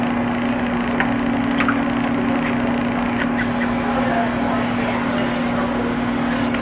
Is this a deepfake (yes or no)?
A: no